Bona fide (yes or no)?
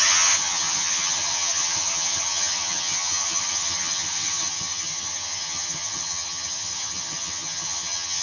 no